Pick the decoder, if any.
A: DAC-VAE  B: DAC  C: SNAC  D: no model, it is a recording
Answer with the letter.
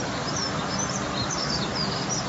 D